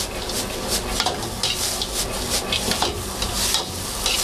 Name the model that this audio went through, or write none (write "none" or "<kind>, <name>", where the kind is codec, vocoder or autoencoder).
none